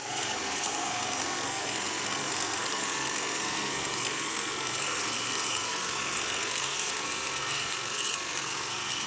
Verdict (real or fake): fake